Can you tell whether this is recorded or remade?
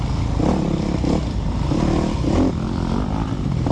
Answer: recorded